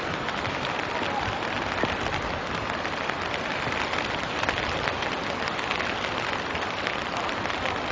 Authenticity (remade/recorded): recorded